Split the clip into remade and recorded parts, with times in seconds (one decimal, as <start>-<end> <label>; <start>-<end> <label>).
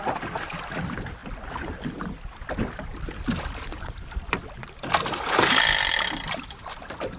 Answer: 0.0-7.2 remade